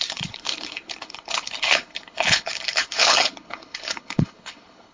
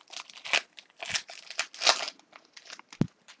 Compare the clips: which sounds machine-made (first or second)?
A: first